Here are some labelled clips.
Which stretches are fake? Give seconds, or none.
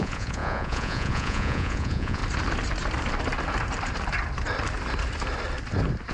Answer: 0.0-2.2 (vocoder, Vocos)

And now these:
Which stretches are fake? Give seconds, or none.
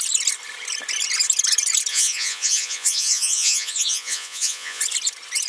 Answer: 1.9-4.8 (vocoder, Vocos)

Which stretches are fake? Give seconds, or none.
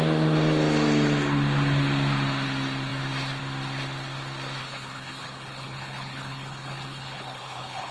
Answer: 4.6-7.9 (codec, HILCodec)